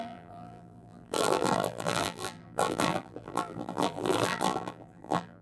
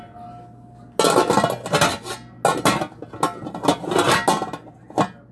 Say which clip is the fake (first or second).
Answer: first